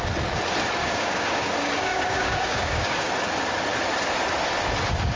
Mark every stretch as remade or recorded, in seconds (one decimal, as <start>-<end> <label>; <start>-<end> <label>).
0.0-0.8 recorded; 0.8-1.5 remade; 1.5-1.9 recorded; 1.9-3.1 remade; 3.1-5.2 recorded